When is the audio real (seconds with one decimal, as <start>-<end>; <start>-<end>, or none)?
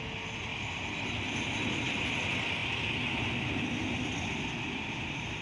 0.0-5.4